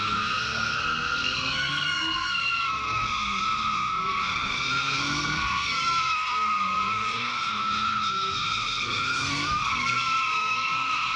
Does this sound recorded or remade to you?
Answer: remade